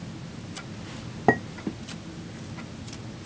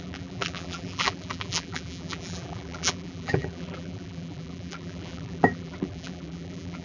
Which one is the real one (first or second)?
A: first